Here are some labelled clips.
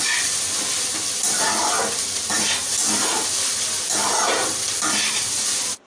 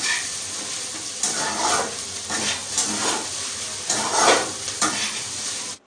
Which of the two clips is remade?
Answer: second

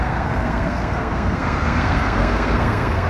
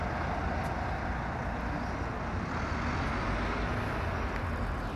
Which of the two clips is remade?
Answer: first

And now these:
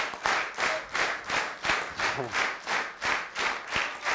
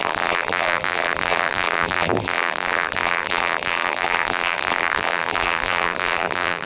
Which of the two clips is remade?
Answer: second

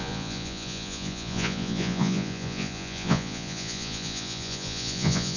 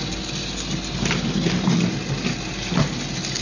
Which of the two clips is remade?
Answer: first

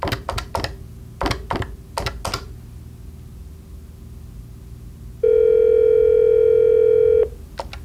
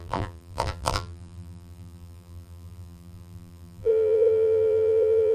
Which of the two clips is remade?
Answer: second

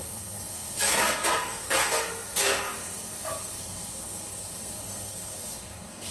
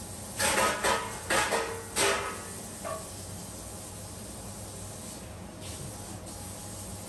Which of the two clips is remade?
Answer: first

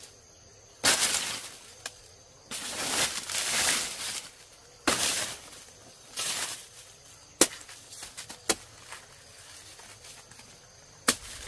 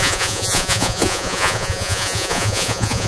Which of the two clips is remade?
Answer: second